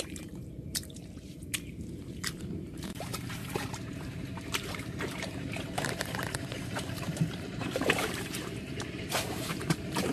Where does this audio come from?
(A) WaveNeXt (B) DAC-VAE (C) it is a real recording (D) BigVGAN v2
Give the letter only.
D